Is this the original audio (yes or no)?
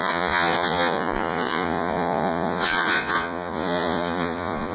no